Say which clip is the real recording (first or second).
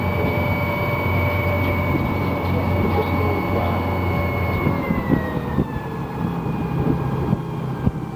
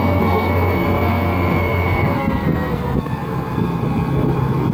first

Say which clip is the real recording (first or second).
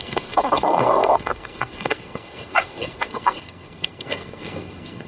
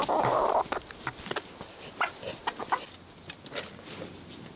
second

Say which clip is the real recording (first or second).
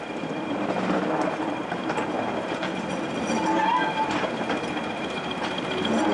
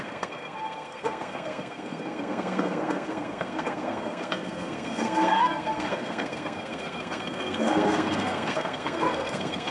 first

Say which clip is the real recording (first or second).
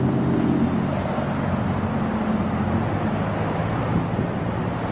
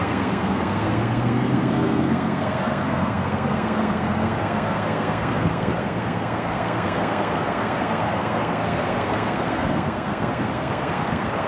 first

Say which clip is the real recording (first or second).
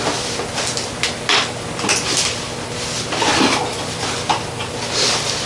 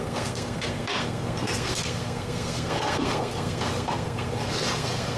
first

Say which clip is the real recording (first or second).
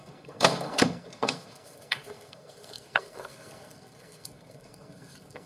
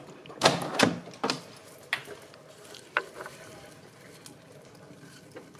second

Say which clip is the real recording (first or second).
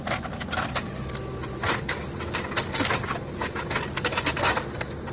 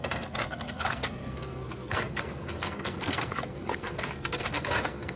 first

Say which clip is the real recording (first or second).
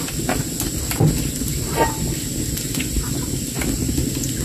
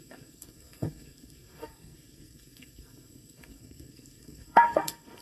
first